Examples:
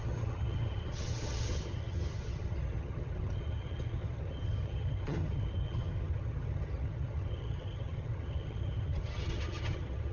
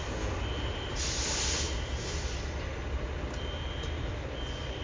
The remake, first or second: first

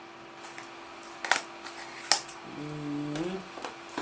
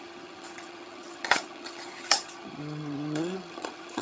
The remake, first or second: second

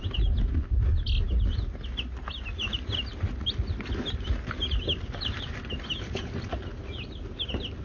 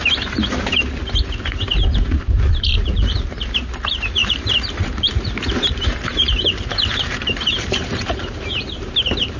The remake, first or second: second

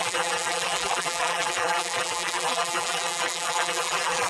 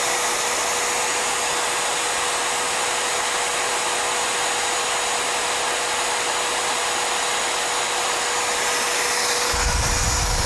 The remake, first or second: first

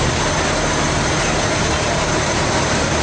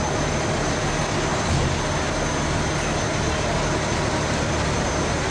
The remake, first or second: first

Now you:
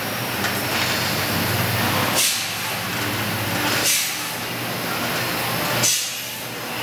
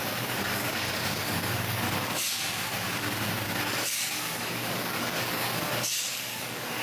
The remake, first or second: second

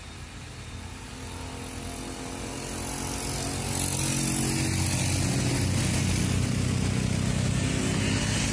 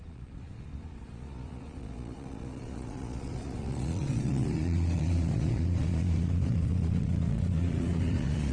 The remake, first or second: second